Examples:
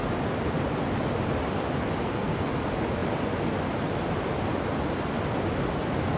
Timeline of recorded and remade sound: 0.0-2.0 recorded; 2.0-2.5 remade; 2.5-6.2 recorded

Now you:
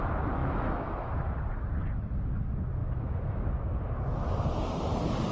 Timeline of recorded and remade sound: 0.0-0.4 recorded; 0.4-1.1 remade; 1.1-2.8 recorded; 2.8-3.5 remade; 3.5-5.3 recorded

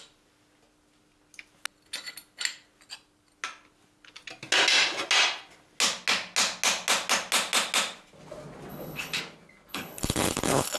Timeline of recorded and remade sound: 0.0-8.7 recorded; 8.7-9.2 remade; 9.2-9.7 recorded; 9.7-10.8 remade